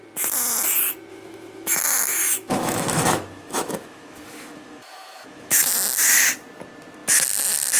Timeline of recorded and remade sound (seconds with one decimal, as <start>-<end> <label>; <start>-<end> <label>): 0.0-1.1 recorded; 1.1-1.8 remade; 1.8-2.2 recorded; 2.2-5.7 remade; 5.7-7.8 recorded